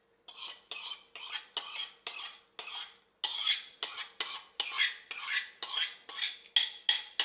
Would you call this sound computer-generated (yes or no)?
no